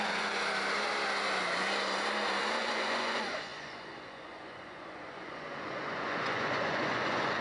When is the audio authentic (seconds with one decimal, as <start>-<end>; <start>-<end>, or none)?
0.4-2.6